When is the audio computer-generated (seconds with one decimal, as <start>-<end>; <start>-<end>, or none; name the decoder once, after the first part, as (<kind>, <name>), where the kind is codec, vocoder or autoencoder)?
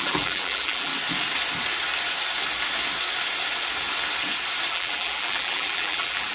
0.0-0.9 (vocoder, BigVGAN v2); 4.7-6.3